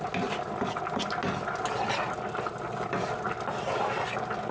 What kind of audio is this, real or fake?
real